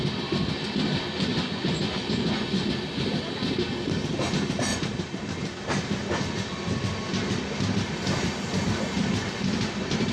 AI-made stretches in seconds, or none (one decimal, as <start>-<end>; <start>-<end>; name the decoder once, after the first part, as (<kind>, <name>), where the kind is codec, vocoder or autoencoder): 1.3-2.6 (vocoder, Vocos)